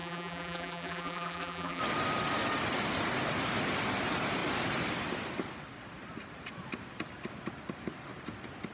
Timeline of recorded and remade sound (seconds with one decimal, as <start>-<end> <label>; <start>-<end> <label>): 0.0-1.8 remade; 1.8-8.7 recorded